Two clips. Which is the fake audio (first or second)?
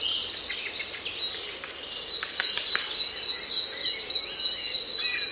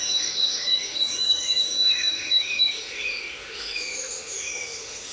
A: second